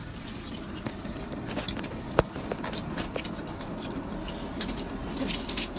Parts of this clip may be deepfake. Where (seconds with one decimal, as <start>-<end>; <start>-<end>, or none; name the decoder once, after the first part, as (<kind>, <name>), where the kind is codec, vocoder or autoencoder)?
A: 0.0-0.8 (vocoder, BigVGAN v2)